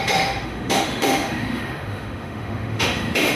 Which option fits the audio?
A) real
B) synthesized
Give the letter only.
B